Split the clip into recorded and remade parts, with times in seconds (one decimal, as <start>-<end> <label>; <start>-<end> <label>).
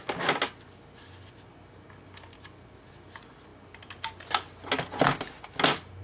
0.0-6.0 recorded